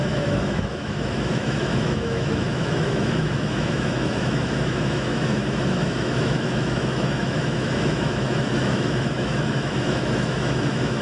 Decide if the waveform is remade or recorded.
remade